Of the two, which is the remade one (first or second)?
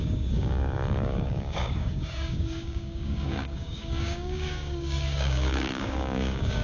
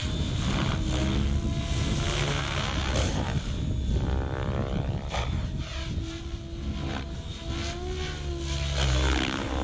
first